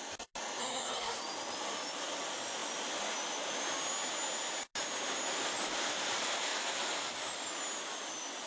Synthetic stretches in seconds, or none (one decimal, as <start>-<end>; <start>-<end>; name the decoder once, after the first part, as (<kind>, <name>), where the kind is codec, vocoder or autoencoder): 0.6-1.2 (codec, SNAC)